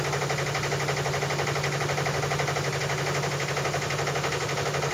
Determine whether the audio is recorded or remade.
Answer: recorded